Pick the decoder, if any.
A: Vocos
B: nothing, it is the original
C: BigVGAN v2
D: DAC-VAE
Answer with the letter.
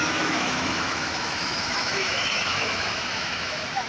D